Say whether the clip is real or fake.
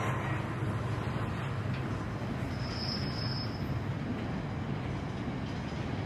real